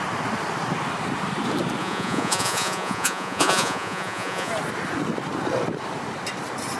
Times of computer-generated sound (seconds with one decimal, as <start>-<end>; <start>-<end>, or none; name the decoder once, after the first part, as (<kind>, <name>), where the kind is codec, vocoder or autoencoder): 1.8-4.5 (vocoder, Vocos)